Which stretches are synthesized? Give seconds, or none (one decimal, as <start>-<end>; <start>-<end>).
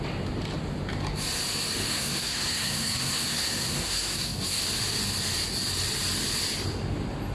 1.9-4.6